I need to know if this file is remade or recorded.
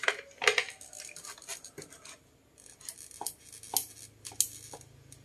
recorded